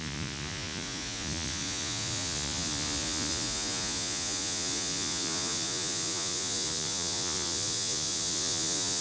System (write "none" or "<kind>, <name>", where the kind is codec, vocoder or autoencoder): vocoder, Vocos